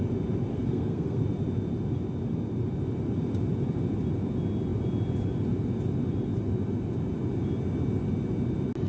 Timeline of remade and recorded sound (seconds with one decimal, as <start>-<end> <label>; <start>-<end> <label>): 0.0-0.5 recorded; 0.5-1.2 remade; 1.2-8.9 recorded